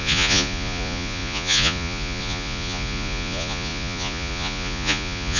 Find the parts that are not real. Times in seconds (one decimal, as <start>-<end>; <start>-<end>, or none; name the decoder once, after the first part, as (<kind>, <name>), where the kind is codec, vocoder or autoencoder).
0.0-5.4 (vocoder, Vocos)